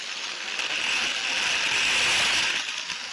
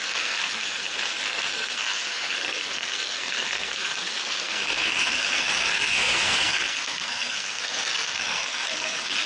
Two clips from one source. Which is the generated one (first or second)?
second